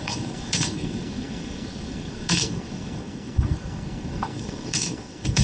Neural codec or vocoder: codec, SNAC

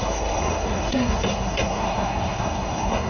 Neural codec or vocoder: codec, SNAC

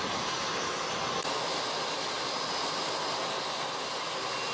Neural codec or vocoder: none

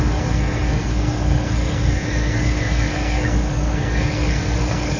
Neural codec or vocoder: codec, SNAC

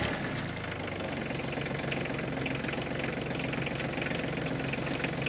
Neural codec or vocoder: none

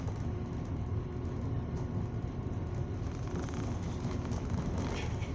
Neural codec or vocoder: none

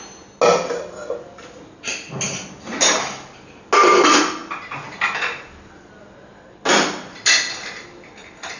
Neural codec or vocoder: none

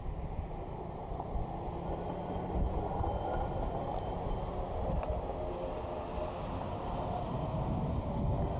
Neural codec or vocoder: none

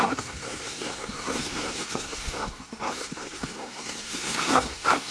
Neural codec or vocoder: codec, SNAC